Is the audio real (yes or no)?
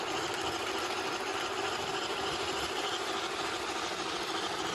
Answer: no